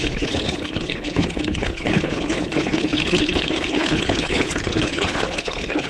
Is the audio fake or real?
fake